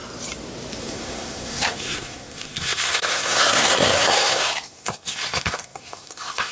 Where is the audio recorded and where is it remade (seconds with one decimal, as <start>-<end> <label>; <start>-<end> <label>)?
0.0-0.8 recorded; 0.8-6.5 remade